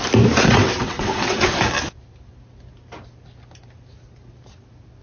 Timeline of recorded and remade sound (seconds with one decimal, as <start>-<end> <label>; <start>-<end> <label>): 0.0-0.6 recorded; 0.6-1.6 remade; 1.6-5.0 recorded